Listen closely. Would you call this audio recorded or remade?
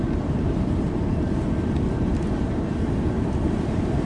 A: remade